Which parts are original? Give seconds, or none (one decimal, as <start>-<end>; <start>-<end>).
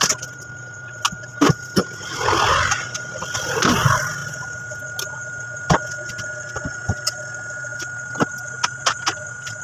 0.0-9.6